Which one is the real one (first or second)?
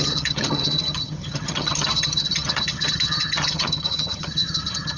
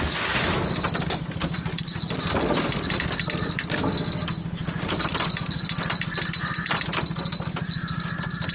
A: second